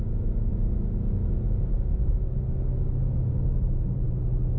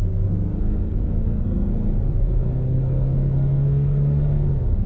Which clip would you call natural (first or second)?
first